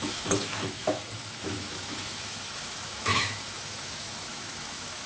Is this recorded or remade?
remade